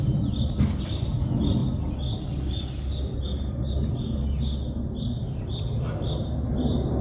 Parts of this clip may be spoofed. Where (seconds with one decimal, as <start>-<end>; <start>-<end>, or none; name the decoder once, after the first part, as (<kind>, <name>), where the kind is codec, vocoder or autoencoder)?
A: none